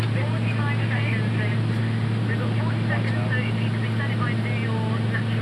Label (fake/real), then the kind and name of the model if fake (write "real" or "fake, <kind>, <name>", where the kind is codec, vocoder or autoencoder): real